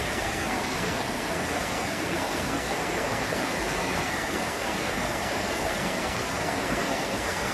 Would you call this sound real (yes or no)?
no